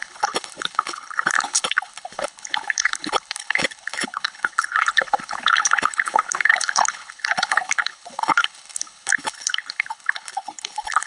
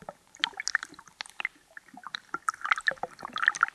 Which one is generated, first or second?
first